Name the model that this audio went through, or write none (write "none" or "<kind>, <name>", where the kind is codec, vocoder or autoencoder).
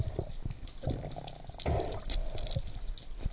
none